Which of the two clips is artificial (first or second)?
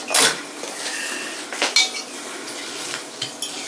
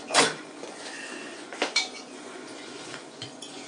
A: second